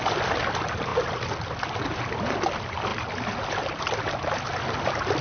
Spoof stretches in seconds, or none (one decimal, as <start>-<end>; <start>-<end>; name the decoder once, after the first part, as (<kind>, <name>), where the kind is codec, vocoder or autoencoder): none